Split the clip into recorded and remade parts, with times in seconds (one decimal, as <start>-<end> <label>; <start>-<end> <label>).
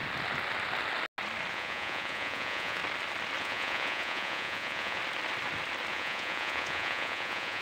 0.0-1.5 recorded; 1.5-2.8 remade; 2.8-3.4 recorded; 3.4-5.0 remade; 5.0-5.9 recorded; 5.9-7.6 remade